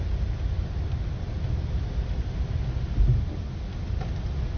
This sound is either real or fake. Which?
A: real